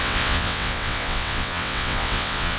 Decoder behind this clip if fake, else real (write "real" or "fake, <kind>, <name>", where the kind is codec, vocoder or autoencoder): fake, vocoder, WaveNeXt